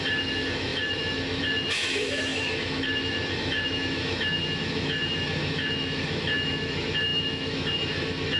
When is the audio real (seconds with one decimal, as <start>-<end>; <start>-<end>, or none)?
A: none